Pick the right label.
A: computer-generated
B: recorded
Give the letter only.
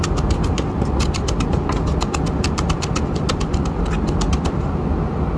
B